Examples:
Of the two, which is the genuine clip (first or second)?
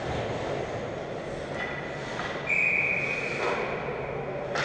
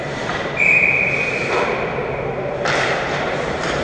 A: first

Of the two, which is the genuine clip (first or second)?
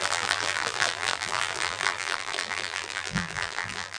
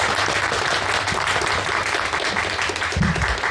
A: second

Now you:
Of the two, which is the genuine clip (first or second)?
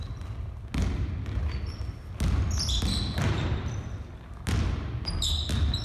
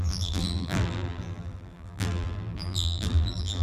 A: first